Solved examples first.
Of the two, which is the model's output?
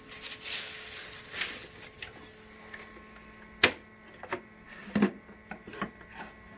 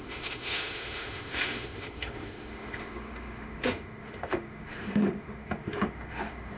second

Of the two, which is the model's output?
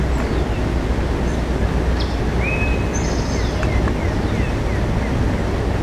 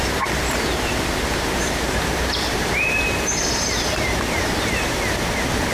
second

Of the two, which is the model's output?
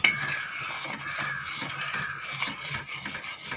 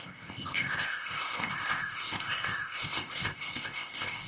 second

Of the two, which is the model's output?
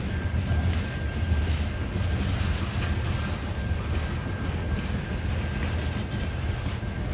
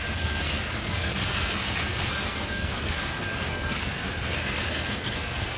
second